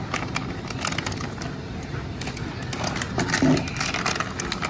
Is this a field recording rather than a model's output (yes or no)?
yes